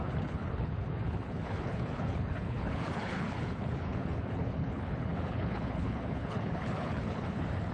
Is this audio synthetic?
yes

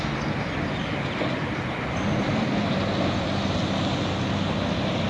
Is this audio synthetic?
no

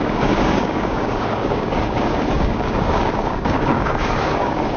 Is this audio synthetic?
yes